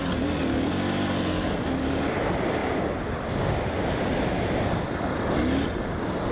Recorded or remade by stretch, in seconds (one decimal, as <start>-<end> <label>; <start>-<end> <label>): 0.0-6.3 recorded